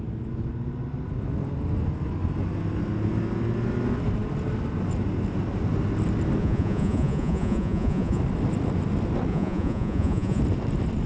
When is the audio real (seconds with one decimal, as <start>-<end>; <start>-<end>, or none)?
0.0-6.4; 8.2-9.3; 10.4-11.1